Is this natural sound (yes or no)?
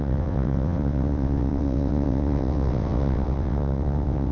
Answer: no